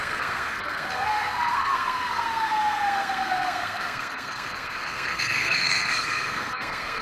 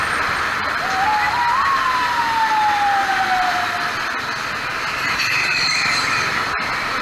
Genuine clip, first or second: second